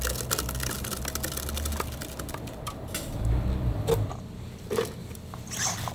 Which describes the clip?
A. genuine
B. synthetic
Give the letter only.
A